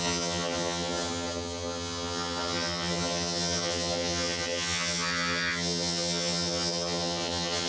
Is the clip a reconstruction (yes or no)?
yes